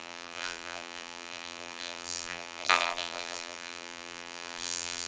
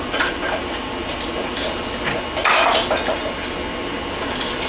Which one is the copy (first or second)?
first